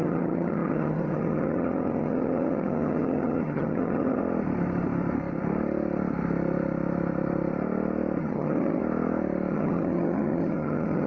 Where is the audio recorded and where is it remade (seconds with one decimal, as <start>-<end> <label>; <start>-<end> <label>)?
0.0-4.2 remade; 4.2-8.2 recorded; 8.2-8.8 remade; 8.8-9.5 recorded; 9.5-11.1 remade